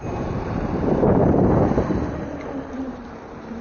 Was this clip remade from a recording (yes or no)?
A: yes